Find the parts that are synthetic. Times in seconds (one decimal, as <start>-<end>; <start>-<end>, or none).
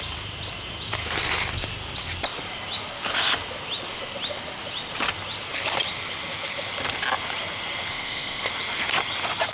7.9-8.5